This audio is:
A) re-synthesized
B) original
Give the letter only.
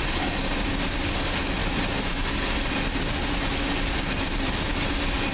B